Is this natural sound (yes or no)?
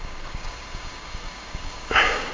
no